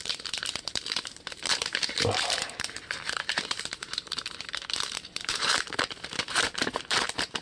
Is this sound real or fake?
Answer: fake